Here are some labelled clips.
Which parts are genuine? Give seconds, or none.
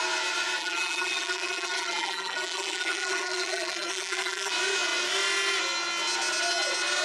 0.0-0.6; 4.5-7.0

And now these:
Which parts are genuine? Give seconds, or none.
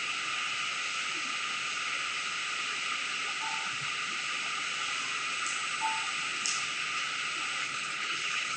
0.0-7.6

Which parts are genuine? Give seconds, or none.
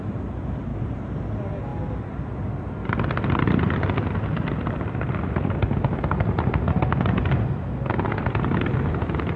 0.0-0.7; 1.2-9.4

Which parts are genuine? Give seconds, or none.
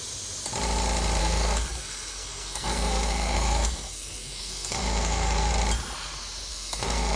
0.0-1.2; 5.5-6.5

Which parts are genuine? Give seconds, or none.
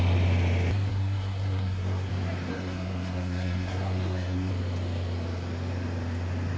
0.0-0.9; 2.1-2.5; 4.5-6.6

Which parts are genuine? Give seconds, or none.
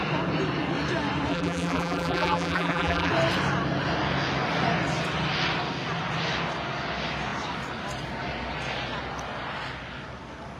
0.0-1.3; 3.1-10.6